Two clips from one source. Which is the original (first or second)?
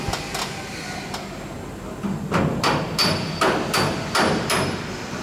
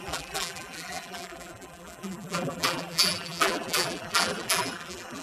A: first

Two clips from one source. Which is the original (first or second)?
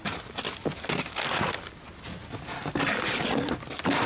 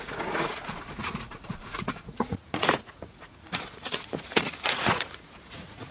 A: first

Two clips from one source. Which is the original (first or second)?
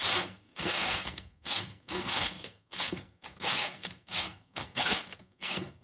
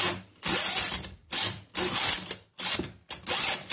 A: second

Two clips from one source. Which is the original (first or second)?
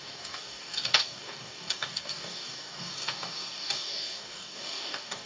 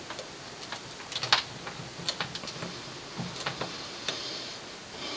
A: second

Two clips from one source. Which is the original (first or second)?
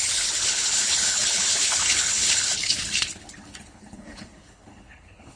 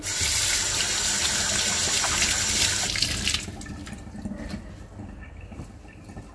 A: second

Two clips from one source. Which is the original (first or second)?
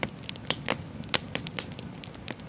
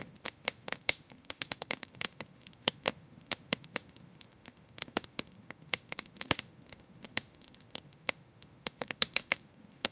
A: first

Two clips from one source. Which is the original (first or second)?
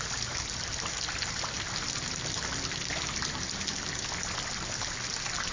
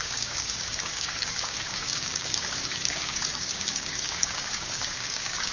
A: first